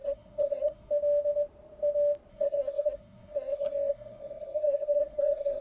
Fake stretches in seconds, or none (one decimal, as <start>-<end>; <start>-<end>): 0.0-0.9; 2.3-5.6